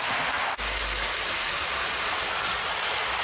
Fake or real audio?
real